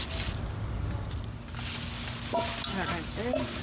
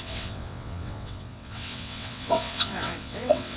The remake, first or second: second